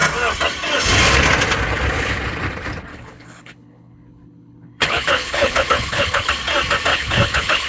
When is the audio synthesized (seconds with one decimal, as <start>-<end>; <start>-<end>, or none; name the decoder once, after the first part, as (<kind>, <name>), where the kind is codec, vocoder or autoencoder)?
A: 2.9-6.3 (codec, HILCodec); 6.9-7.7